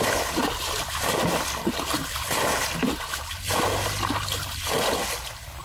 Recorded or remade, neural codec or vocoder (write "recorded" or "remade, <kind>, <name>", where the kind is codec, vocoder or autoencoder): recorded